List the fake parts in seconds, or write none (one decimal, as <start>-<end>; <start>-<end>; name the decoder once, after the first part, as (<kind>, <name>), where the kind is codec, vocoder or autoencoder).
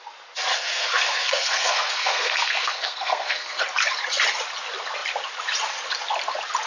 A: 0.5-3.6 (codec, SNAC)